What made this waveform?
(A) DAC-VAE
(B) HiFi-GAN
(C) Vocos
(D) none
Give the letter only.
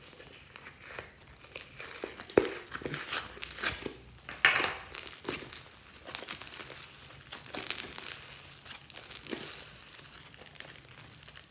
D